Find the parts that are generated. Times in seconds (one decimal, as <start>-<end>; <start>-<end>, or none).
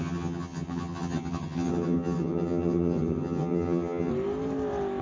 0.0-4.1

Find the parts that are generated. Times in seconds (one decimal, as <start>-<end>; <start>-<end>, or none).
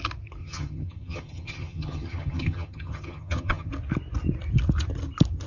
0.4-3.7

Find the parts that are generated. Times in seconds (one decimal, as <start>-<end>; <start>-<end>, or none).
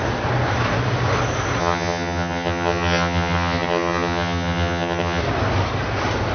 1.6-5.2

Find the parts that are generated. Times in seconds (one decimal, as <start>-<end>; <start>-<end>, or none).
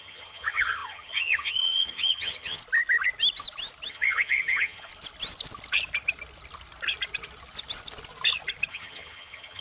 0.0-2.6; 3.9-4.9; 8.7-9.6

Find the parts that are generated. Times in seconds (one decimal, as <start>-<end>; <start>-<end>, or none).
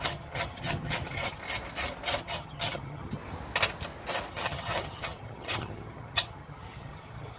0.0-1.4; 2.2-3.2; 4.3-7.4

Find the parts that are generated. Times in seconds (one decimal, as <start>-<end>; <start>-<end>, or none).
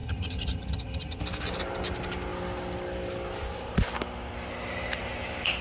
0.0-1.2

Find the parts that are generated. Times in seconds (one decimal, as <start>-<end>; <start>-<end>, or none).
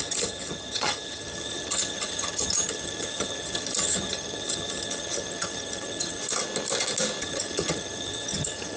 0.0-6.2; 7.2-8.8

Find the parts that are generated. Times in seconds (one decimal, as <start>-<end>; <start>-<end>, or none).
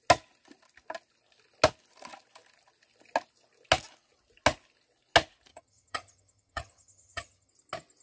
5.5-7.5